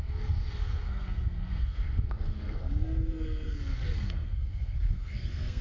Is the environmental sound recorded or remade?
remade